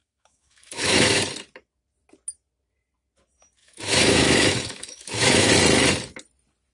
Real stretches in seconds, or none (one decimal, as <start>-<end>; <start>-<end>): 1.2-3.6; 5.5-6.7